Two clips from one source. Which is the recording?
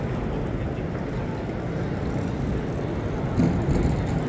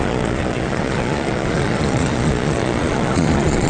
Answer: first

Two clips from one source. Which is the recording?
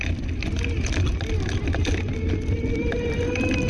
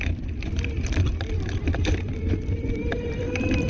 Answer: first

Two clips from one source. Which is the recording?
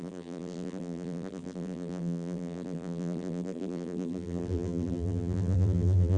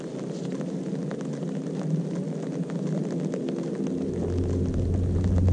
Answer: second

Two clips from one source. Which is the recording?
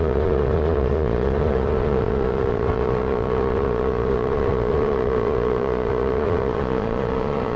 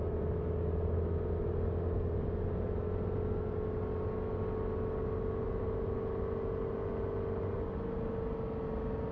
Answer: second